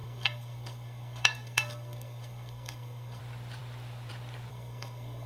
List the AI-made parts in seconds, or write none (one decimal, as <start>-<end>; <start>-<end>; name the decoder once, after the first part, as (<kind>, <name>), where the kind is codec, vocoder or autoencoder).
0.0-3.2 (codec, SNAC); 4.5-5.3